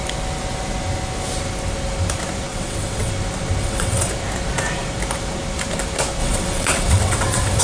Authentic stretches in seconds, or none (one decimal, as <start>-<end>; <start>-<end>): 0.0-2.5; 3.1-3.6; 4.1-6.2